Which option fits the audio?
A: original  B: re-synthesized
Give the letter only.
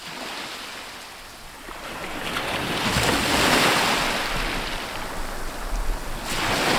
A